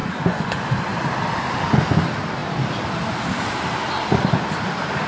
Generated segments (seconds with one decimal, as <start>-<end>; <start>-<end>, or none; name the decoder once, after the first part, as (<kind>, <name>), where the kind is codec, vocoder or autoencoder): 0.0-0.5 (vocoder, Vocos)